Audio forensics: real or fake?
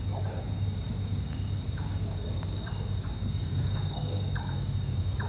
fake